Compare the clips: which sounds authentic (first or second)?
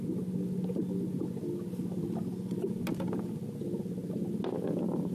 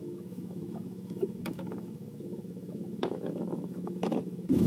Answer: first